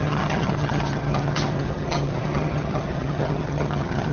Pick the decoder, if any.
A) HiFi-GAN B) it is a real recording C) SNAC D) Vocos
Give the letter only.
A